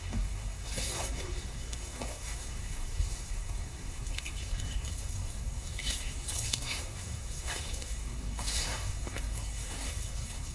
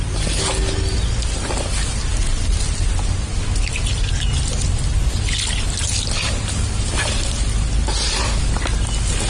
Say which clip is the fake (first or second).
first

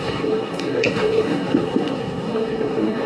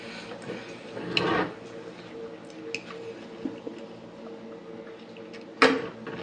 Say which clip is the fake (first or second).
first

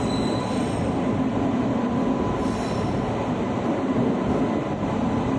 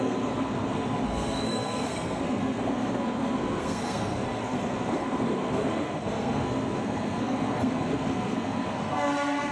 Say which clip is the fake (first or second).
second